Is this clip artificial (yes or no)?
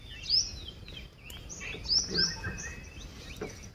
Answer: no